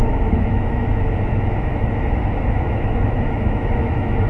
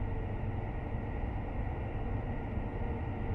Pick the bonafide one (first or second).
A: second